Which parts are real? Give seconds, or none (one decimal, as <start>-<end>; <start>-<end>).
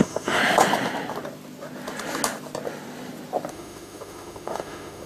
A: 0.4-3.5